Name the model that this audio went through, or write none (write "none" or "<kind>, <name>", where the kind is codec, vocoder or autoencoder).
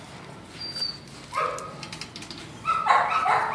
none